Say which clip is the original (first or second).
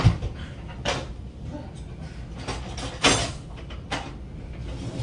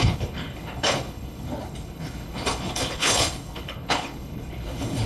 first